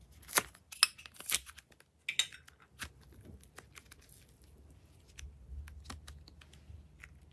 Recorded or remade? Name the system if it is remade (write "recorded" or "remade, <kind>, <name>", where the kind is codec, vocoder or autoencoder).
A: recorded